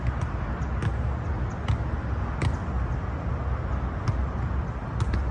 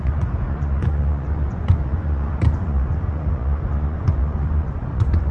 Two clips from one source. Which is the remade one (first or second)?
second